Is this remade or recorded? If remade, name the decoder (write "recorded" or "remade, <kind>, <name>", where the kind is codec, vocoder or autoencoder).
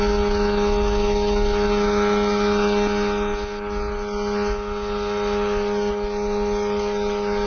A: recorded